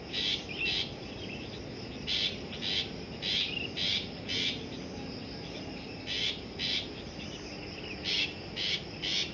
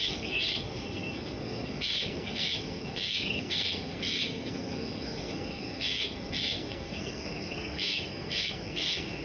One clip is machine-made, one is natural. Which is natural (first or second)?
first